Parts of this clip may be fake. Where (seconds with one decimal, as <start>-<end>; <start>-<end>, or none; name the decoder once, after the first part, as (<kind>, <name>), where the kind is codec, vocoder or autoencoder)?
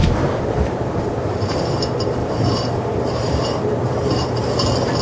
0.0-1.6 (vocoder, BigVGAN v2); 2.2-4.4